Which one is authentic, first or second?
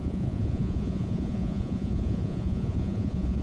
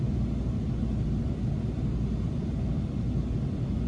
second